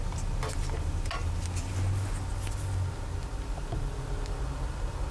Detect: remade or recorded recorded